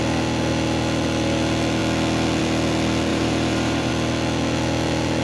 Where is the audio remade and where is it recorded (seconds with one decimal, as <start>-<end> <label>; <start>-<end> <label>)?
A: 0.0-3.1 recorded; 3.1-3.9 remade; 3.9-5.2 recorded